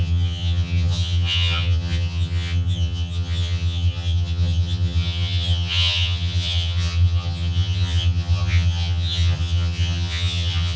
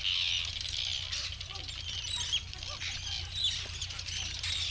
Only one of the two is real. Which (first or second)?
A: second